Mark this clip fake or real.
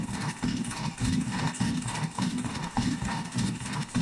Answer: fake